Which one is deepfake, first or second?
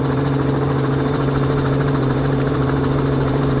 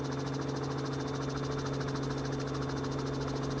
first